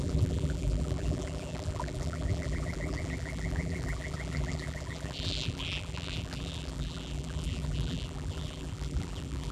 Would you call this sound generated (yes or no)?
yes